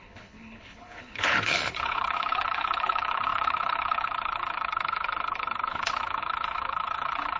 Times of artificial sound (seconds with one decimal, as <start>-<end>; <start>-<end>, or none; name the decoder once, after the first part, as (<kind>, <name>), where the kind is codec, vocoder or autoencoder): 0.0-7.4 (codec, HILCodec)